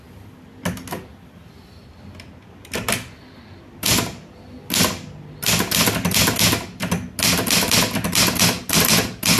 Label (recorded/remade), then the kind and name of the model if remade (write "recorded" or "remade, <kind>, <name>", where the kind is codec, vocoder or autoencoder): recorded